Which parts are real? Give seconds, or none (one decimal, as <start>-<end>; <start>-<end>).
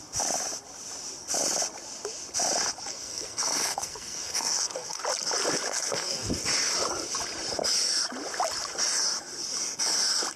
0.0-2.9; 5.0-5.7; 6.3-10.4